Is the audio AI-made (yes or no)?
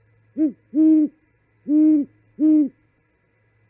no